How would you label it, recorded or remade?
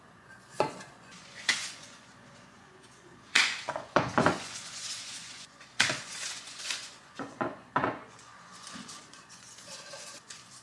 remade